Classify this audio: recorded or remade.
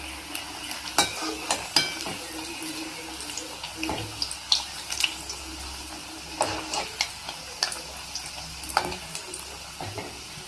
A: recorded